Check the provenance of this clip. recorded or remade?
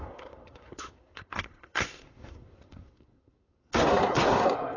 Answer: remade